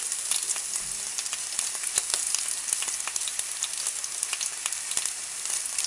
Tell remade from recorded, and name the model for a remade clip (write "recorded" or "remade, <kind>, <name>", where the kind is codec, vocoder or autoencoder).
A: recorded